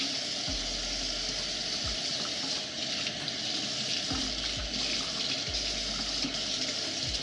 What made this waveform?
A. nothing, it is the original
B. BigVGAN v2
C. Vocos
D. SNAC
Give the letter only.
A